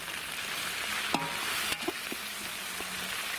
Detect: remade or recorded recorded